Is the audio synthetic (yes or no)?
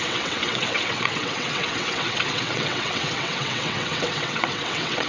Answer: yes